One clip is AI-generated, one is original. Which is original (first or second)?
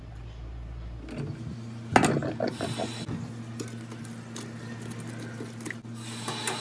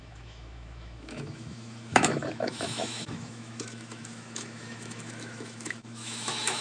first